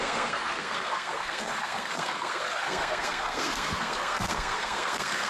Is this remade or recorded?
remade